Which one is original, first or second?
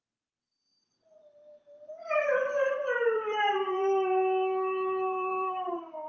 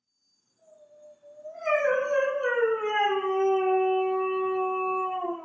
second